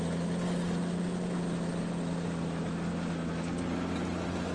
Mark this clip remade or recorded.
recorded